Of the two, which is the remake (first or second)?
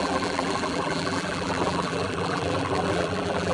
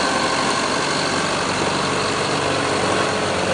first